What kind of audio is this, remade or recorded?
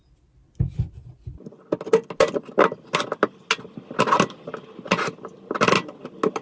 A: recorded